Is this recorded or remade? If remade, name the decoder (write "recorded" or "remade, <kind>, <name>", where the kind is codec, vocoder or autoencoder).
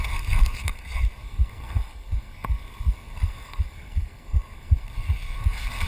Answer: remade, codec, SNAC